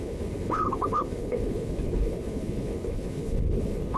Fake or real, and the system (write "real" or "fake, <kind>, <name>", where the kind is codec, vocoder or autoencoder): fake, codec, HILCodec